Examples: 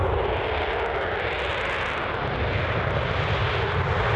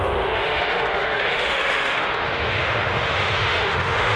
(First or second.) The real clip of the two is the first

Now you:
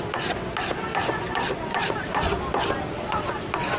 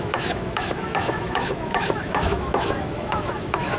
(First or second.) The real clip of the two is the first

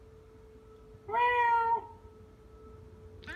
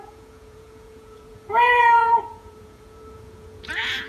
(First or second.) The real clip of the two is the first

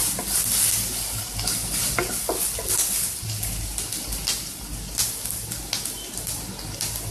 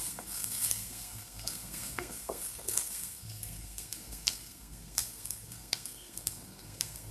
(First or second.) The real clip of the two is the first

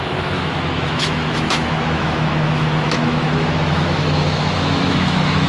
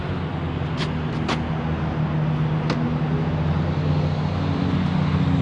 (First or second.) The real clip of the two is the second